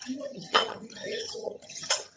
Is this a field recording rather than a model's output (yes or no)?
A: no